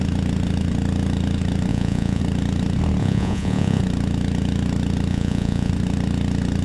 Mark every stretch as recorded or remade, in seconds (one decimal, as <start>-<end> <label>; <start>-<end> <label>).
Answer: 0.0-1.7 recorded; 1.7-2.2 remade; 2.2-3.0 recorded; 3.0-3.8 remade; 3.8-5.1 recorded; 5.1-5.7 remade; 5.7-6.6 recorded